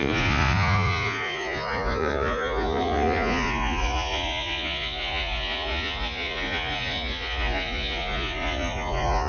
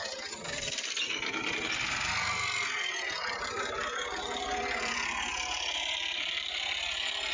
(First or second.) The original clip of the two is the second